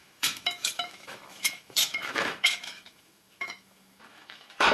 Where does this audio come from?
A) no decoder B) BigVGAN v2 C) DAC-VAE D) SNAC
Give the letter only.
C